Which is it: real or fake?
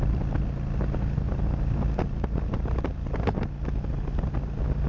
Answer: real